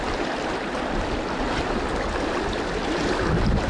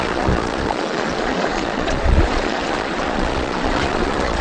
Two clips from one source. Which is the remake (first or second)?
second